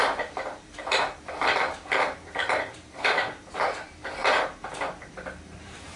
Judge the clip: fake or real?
fake